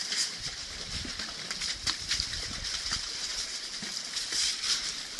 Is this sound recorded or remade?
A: recorded